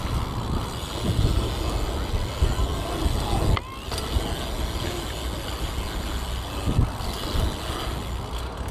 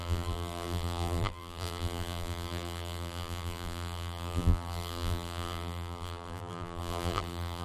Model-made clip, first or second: second